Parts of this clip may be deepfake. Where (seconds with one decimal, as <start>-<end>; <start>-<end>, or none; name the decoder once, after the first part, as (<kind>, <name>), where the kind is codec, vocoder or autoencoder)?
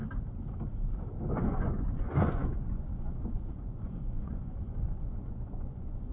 1.3-6.1 (vocoder, Vocos)